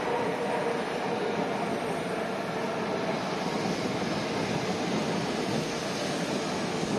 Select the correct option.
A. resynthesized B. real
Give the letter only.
B